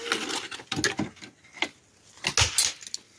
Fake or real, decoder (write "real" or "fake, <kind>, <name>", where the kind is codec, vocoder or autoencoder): real